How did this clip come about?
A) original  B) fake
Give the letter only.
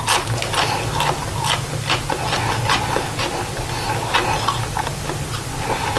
A